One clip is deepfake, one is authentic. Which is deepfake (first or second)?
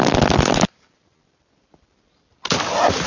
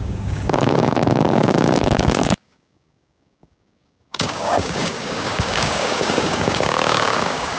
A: second